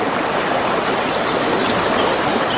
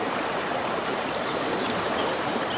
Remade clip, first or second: second